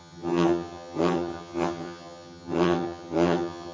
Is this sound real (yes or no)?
no